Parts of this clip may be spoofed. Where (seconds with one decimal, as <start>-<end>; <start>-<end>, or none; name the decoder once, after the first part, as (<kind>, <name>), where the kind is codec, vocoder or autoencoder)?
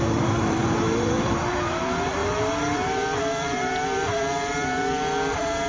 0.0-5.7 (vocoder, BigVGAN v2)